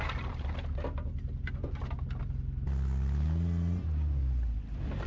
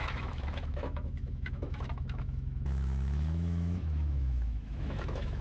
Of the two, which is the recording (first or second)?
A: first